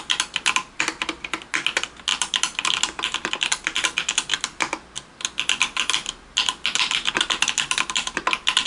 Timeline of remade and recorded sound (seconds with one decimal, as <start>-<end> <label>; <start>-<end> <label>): 0.0-8.7 recorded